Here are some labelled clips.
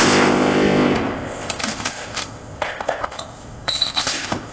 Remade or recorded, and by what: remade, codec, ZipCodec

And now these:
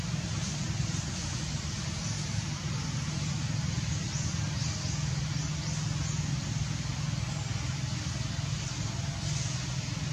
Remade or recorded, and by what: recorded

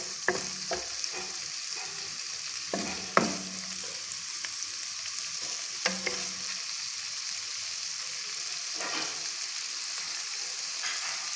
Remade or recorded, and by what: recorded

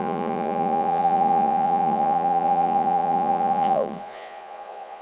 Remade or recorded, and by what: remade, vocoder, Vocos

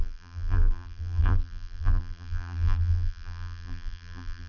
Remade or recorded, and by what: remade, vocoder, BigVGAN v2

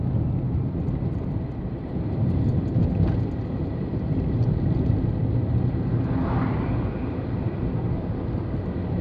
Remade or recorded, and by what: recorded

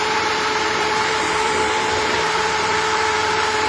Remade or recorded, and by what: remade, vocoder, BigVGAN v2